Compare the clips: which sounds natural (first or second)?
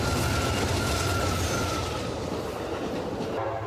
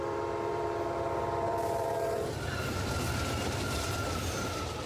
first